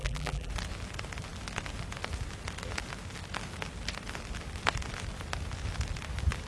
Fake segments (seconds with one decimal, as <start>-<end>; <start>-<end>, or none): 0.0-0.5